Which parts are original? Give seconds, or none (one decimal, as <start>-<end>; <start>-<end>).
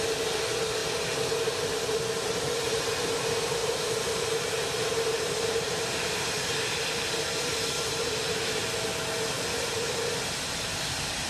0.0-3.6; 6.9-7.5; 8.4-11.3